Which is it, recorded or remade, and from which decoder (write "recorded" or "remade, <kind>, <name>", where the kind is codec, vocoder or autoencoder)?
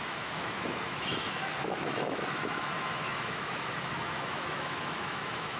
remade, autoencoder, DAC-VAE